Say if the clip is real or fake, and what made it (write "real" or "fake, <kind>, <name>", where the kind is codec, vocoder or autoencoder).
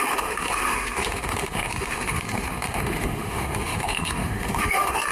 fake, autoencoder, DAC-VAE